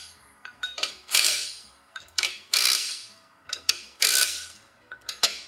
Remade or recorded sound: remade